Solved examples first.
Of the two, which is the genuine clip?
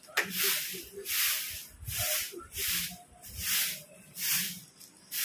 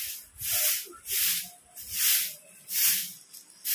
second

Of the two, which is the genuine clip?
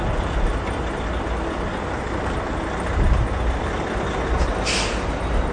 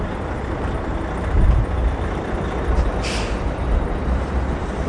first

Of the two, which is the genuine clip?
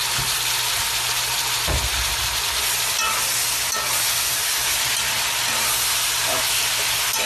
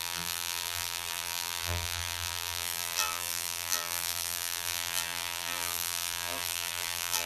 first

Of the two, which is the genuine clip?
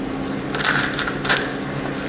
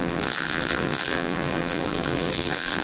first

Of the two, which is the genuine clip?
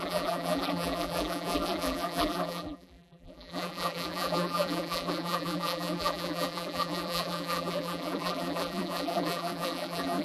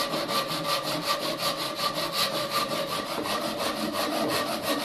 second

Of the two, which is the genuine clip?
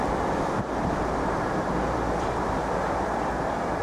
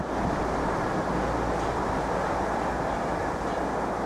second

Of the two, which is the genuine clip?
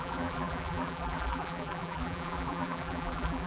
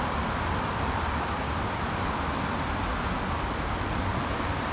second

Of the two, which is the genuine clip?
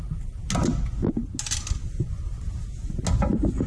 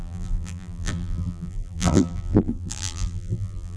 first